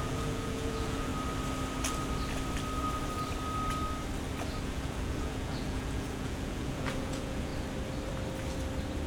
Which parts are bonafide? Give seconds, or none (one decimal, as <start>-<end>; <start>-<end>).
1.1-4.6; 7.5-9.1